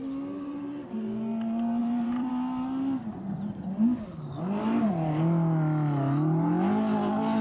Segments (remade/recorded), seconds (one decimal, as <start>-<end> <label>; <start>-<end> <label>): 0.0-1.8 recorded; 1.8-2.3 remade; 2.3-7.4 recorded